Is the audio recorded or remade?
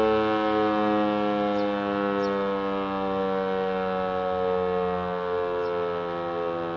recorded